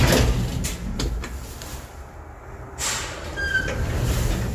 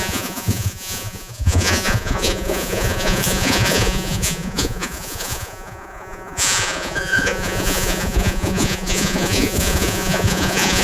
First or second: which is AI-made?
second